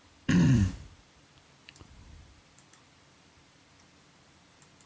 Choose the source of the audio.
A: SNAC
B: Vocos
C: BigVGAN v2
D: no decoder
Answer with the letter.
C